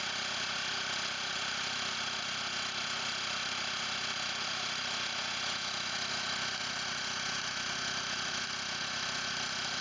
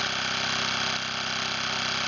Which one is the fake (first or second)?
first